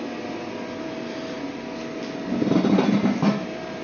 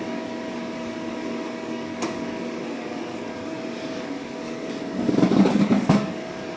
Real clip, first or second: first